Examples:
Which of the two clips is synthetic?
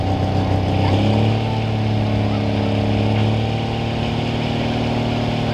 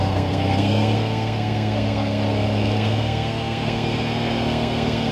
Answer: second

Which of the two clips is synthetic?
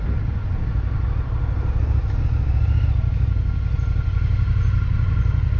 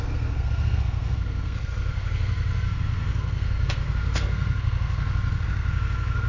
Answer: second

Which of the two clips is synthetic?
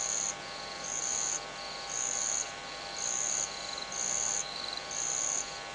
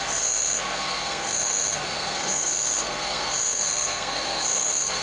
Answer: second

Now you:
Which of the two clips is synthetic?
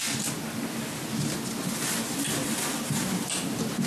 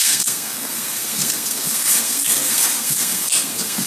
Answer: second